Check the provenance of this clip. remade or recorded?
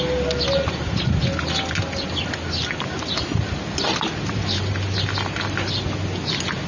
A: recorded